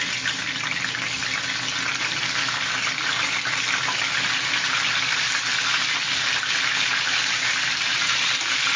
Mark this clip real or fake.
real